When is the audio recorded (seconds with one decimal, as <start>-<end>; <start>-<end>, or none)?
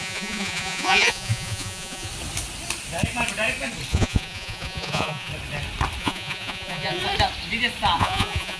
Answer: 2.1-3.9; 5.3-6.0; 7.0-8.0